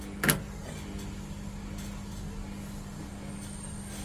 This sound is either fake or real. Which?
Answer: real